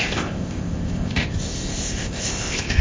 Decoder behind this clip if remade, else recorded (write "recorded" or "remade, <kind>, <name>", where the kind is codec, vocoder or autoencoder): remade, codec, ZipCodec